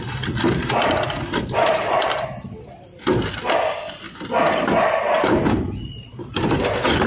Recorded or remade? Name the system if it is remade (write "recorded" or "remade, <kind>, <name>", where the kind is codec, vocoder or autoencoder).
recorded